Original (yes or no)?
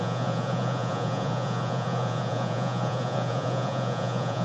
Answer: no